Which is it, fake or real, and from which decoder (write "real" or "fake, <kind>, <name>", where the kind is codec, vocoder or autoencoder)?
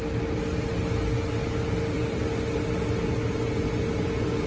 real